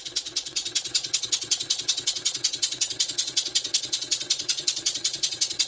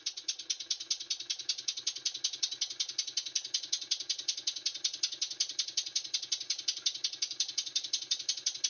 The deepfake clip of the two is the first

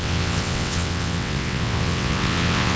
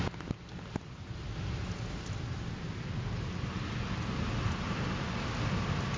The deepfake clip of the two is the first